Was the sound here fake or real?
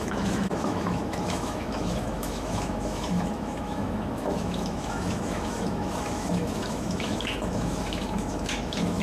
fake